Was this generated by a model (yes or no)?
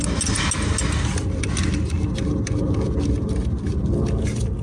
no